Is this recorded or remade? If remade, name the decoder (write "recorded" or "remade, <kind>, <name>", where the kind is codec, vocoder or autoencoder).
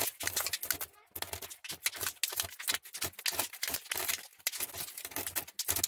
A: recorded